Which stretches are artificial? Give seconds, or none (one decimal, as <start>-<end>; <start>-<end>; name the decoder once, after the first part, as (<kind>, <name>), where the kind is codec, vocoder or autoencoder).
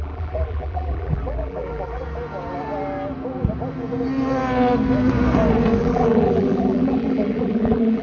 0.0-2.0 (vocoder, BigVGAN v2); 5.8-8.0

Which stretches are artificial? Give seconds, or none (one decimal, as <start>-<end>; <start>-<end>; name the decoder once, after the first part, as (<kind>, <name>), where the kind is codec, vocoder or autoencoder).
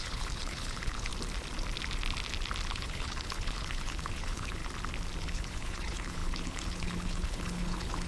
0.0-1.1 (codec, HILCodec); 2.7-4.6; 5.2-8.1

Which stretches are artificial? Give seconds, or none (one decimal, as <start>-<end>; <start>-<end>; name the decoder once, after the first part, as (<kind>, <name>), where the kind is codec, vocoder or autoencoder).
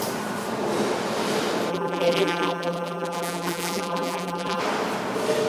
1.7-4.6 (vocoder, BigVGAN v2)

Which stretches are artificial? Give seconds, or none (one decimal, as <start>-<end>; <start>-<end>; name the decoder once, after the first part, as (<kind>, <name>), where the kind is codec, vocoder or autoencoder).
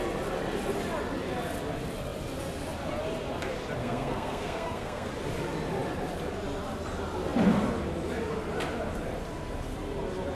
3.8-5.1 (codec, SNAC)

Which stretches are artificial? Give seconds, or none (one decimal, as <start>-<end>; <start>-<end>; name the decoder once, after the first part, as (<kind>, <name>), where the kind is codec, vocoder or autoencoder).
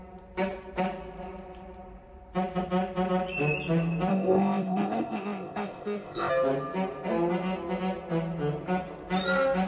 4.1-6.3 (codec, ZipCodec)